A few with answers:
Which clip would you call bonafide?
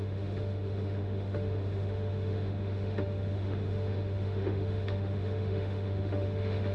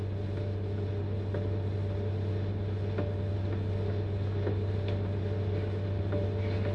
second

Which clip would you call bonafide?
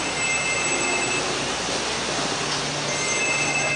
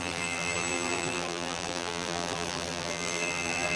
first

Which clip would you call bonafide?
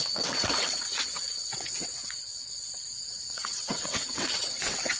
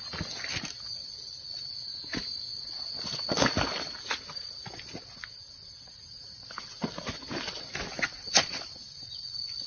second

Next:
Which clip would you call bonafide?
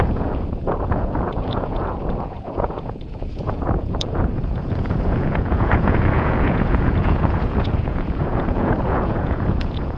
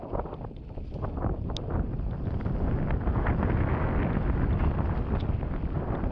second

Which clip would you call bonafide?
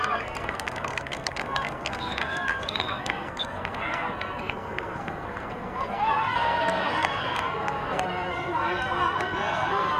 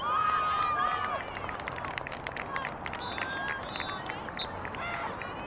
second